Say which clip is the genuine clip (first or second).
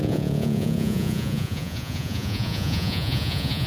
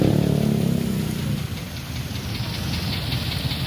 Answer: second